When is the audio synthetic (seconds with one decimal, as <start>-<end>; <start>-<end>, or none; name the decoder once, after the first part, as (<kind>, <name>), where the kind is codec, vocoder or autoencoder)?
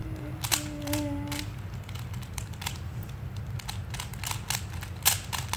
0.0-3.4 (vocoder, BigVGAN v2)